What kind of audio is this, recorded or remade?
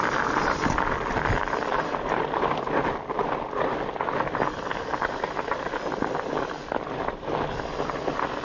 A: recorded